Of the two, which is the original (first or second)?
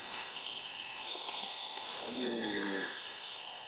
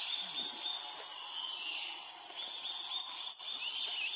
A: second